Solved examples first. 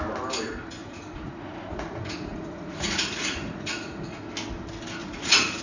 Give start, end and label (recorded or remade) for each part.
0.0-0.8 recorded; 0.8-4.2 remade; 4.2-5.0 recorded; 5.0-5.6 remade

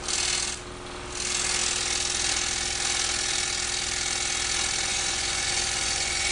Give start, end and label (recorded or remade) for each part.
0.0-4.9 recorded; 4.9-6.3 remade

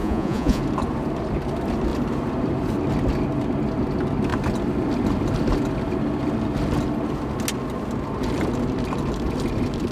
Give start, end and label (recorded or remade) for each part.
0.0-0.6 remade; 0.6-9.9 recorded

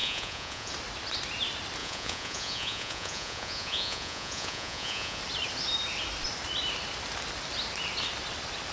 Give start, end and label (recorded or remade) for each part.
0.0-0.7 remade; 0.7-1.8 recorded; 1.8-5.2 remade; 5.2-8.7 recorded

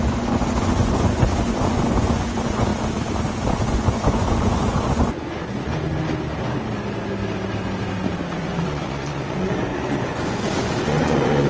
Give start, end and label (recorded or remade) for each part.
0.0-2.7 remade; 2.7-3.3 recorded; 3.3-5.7 remade; 5.7-8.3 recorded; 8.3-11.5 remade

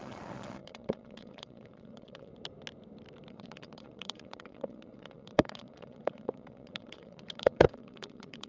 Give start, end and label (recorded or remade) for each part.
0.0-2.3 remade; 2.3-3.3 recorded; 3.3-8.5 remade

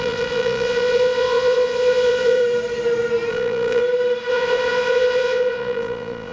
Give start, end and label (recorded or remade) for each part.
0.0-2.4 remade; 2.4-3.3 recorded; 3.3-3.8 remade; 3.8-4.3 recorded; 4.3-6.3 remade

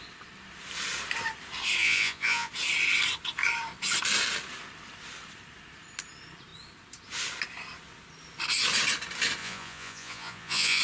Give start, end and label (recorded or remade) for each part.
0.0-1.8 recorded; 1.8-2.5 remade; 2.5-9.4 recorded; 9.4-10.8 remade